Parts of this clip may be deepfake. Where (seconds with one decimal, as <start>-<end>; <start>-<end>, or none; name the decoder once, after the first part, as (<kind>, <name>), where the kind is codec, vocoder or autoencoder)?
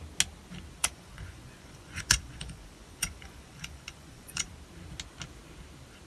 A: 0.8-4.5 (vocoder, Vocos)